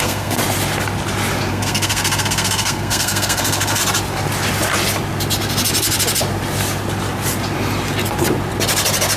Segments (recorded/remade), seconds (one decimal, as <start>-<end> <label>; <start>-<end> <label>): 0.0-0.4 remade; 0.4-1.5 recorded; 1.5-3.8 remade; 3.8-9.2 recorded